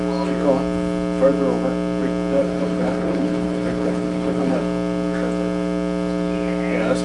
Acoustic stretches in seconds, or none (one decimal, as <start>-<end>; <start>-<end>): 0.0-2.4; 4.6-7.0